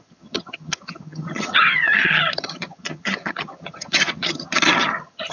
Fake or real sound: fake